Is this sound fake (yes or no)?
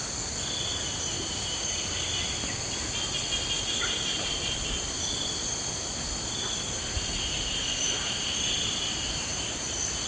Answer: no